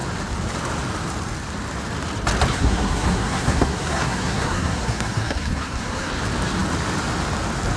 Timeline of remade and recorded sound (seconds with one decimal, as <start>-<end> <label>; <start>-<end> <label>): 0.0-2.5 recorded; 2.5-6.1 remade; 6.1-7.8 recorded